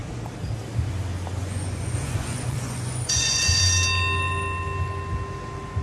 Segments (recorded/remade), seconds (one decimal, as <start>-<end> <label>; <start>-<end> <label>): 0.0-1.4 recorded; 1.4-3.6 remade; 3.6-5.8 recorded